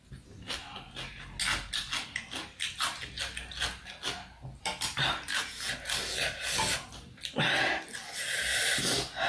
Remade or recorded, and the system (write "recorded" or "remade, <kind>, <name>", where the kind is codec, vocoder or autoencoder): recorded